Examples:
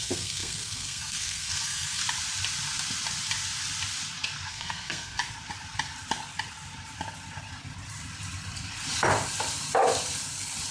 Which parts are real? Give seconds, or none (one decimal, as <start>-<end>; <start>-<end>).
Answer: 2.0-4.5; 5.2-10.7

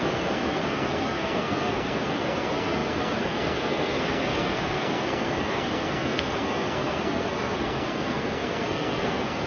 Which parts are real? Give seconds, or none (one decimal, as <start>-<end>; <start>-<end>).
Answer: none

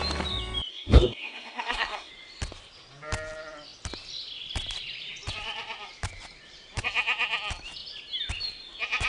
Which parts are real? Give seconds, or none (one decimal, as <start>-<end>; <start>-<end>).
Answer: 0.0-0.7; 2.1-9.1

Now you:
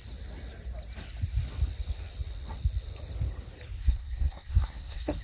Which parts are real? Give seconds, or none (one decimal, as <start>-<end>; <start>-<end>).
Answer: 0.0-3.8